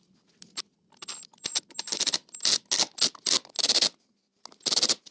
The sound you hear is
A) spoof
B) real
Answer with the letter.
B